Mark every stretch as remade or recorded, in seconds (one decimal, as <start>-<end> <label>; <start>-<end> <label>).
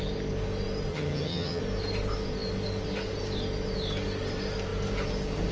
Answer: 0.0-0.9 recorded; 0.9-1.6 remade; 1.6-5.5 recorded